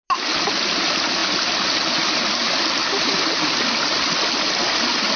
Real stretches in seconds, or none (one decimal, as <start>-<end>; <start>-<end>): 0.0-5.2